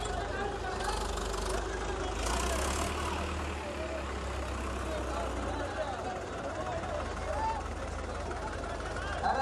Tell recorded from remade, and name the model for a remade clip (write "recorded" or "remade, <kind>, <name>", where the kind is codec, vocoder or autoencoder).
recorded